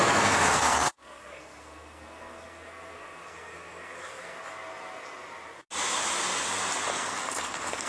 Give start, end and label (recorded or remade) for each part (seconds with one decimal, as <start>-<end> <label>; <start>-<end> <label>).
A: 0.0-4.4 remade; 4.4-6.9 recorded; 6.9-7.9 remade